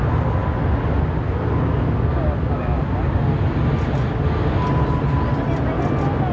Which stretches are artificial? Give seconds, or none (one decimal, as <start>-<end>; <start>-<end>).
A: none